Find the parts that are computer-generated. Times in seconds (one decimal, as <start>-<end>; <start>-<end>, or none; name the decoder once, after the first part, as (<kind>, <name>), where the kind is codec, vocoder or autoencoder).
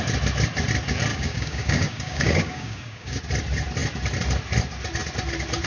1.1-3.2 (codec, DAC)